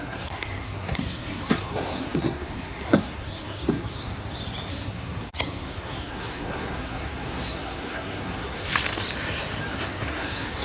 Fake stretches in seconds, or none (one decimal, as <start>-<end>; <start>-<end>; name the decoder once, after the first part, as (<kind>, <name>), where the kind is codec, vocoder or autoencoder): 0.0-4.1 (codec, SNAC); 4.7-8.8; 9.7-10.6